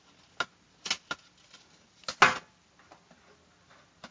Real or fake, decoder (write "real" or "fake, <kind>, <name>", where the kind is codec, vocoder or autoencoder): real